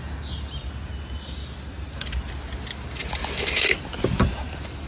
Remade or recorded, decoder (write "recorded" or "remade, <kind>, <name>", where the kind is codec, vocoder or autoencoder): recorded